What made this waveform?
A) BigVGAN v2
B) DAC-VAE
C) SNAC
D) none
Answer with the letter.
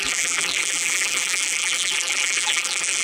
A